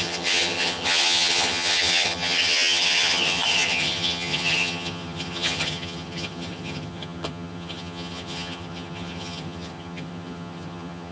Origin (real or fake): fake